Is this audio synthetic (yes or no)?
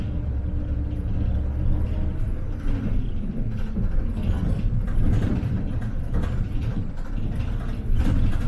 no